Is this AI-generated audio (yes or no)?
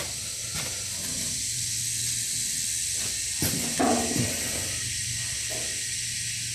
no